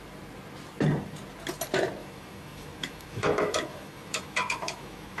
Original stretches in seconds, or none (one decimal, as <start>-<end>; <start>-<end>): 0.0-2.0